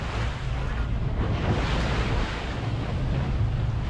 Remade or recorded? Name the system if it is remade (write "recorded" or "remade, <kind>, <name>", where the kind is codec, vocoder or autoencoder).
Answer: recorded